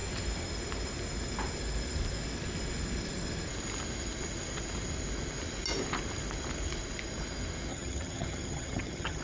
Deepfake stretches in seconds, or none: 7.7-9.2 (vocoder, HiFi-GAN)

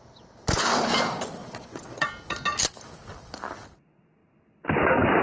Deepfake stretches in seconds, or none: 1.4-2.1 (vocoder, WaveNeXt)

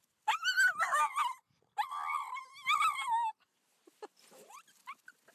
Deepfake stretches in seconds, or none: none